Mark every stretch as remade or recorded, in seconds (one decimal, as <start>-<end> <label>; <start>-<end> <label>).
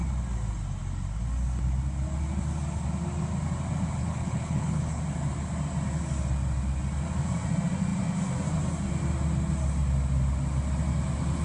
0.0-4.0 recorded; 4.0-5.0 remade; 5.0-11.4 recorded